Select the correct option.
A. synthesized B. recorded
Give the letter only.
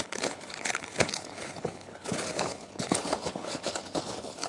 A